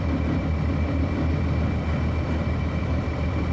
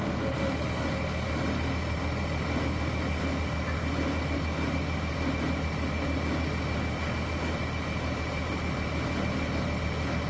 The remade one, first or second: first